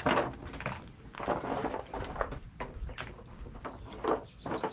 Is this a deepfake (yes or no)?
no